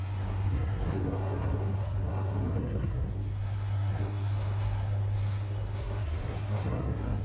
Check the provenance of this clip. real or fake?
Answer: fake